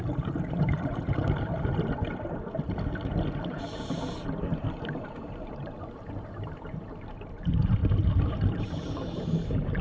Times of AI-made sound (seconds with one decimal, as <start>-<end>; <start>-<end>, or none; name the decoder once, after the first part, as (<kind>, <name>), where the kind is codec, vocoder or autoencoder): 0.0-1.7 (vocoder, BigVGAN v2); 3.5-7.8; 8.5-9.8